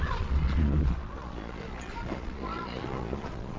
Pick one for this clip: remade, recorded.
remade